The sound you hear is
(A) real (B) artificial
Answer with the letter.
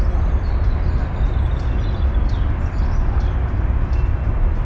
A